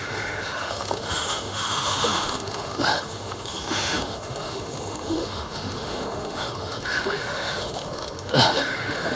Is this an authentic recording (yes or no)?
no